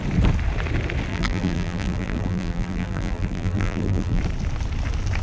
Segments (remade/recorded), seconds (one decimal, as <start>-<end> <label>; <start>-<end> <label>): 0.0-1.1 recorded; 1.1-4.2 remade; 4.2-5.2 recorded